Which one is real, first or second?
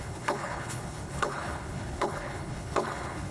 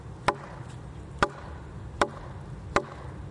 second